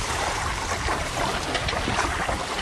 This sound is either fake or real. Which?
fake